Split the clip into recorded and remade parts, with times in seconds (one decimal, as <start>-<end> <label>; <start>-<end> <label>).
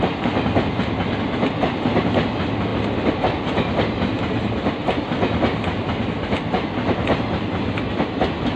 0.0-8.6 recorded